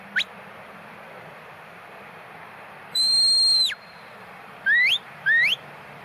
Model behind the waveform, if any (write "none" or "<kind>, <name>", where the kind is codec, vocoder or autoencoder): vocoder, BigVGAN v2